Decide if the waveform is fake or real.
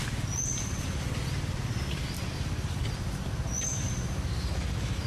real